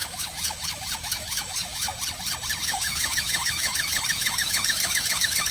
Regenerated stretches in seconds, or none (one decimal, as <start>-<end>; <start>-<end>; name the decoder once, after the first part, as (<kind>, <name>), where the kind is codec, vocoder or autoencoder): 0.0-1.9 (autoencoder, DAC-VAE); 2.6-5.5